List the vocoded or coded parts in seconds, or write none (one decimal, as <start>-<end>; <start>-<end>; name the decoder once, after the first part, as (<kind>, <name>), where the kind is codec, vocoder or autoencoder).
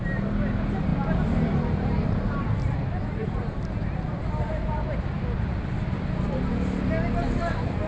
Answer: none